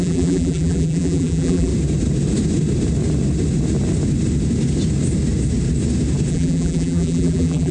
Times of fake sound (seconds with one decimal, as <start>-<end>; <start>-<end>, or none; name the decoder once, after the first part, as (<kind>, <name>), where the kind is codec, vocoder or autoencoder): 0.0-1.7 (vocoder, BigVGAN v2); 6.3-7.7